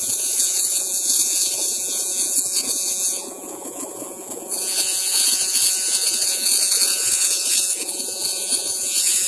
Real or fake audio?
fake